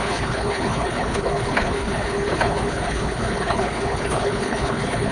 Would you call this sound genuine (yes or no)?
no